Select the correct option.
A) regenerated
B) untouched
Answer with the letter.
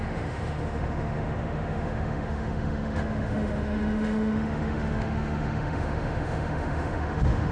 A